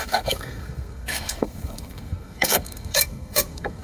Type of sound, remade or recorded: remade